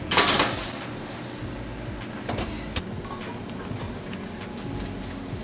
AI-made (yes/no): no